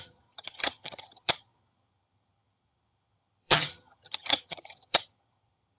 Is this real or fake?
fake